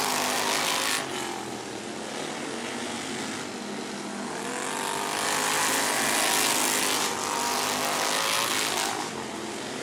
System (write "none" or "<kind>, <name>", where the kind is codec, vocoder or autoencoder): none